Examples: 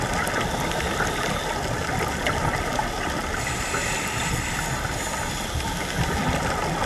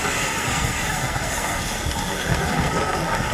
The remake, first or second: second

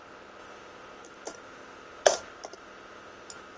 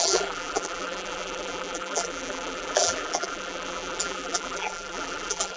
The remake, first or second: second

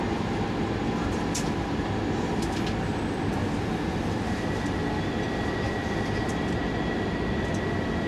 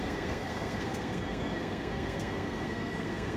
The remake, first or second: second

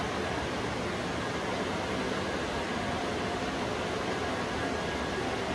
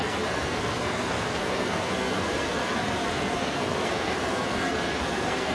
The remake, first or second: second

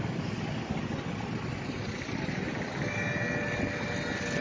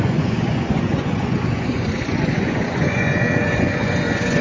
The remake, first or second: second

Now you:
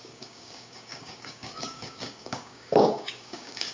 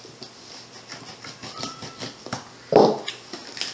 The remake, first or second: first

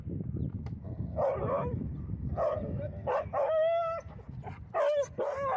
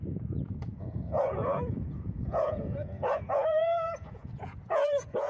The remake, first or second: second